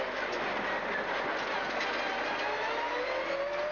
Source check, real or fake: real